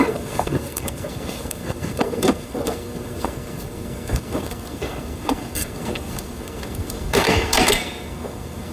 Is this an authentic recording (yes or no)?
no